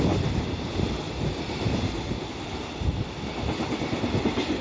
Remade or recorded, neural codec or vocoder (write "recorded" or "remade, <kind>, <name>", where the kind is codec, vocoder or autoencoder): recorded